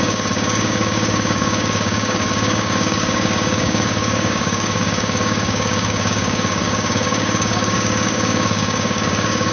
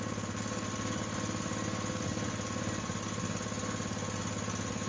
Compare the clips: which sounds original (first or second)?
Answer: second